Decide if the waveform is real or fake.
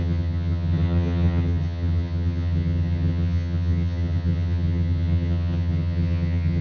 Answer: fake